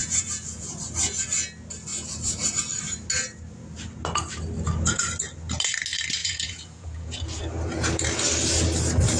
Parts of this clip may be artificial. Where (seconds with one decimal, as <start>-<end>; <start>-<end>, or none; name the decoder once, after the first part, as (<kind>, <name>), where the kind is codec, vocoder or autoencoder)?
0.0-0.8 (vocoder, Vocos); 6.2-7.4